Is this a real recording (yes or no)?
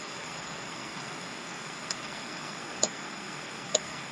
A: no